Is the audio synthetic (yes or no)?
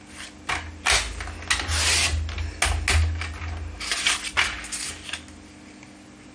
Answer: no